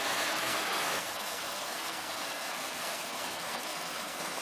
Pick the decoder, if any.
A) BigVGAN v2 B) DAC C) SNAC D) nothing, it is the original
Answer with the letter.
C